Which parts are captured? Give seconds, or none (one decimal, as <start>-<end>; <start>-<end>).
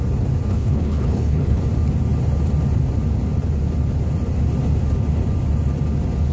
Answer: 0.0-0.5; 1.6-6.3